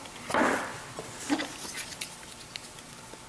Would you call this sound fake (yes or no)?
no